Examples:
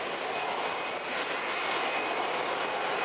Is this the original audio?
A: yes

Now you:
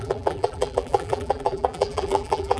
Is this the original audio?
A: no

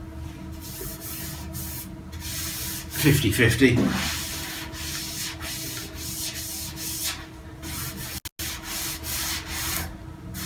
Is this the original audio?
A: yes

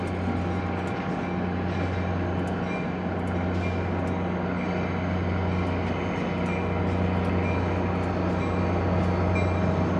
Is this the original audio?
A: yes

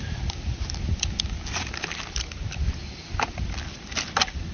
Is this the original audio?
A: yes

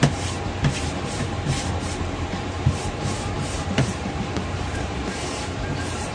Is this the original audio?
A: no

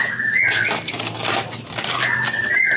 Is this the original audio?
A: yes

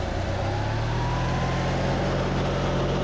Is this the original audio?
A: yes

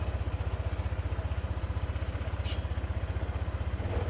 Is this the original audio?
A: yes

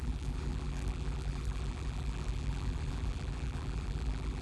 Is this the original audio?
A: no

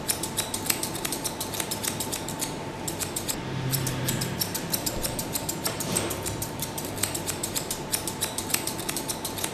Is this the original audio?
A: no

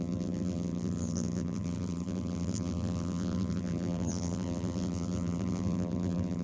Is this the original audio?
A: no